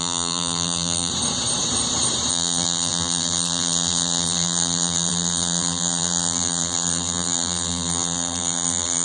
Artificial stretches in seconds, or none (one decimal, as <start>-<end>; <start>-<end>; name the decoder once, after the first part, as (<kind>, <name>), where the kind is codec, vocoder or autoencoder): 0.0-1.1 (vocoder, BigVGAN v2); 2.3-9.0